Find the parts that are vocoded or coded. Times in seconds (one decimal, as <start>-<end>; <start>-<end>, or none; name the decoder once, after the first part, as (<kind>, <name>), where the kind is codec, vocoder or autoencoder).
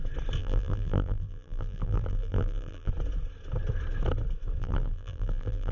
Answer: 0.4-2.9 (vocoder, BigVGAN v2); 4.6-5.7